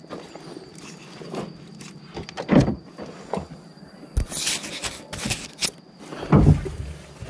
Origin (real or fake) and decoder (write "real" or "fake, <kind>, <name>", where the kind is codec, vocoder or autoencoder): real